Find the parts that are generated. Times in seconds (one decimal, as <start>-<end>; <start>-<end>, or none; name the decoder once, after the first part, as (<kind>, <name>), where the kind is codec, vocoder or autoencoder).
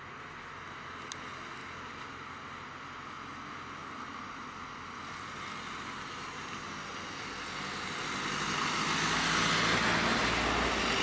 none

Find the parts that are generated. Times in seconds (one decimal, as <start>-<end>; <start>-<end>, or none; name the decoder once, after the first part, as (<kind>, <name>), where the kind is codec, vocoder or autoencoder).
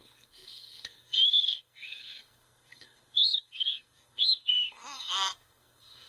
0.0-6.1 (codec, SNAC)